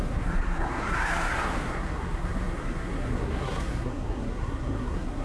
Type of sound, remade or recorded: remade